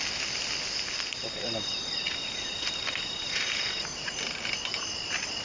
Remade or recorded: remade